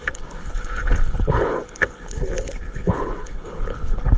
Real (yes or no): no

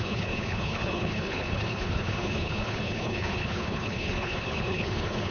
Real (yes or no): no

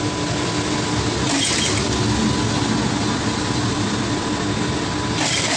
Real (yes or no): yes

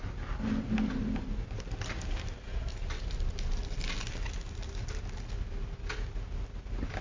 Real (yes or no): yes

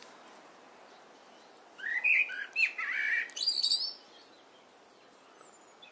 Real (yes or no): yes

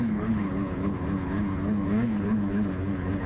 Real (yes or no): no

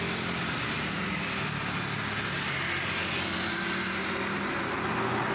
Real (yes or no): yes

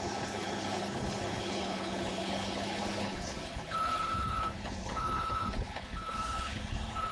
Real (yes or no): no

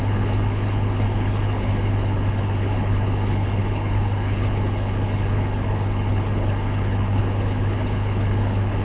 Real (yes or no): no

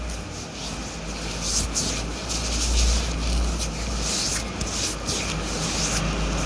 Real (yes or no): yes